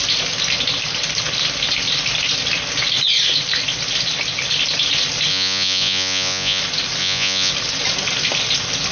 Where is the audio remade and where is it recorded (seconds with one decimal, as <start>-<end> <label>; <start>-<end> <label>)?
0.0-5.3 recorded; 5.3-6.6 remade; 6.6-7.0 recorded; 7.0-7.5 remade; 7.5-8.9 recorded